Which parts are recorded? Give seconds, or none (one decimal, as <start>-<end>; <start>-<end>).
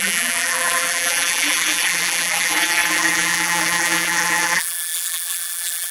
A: none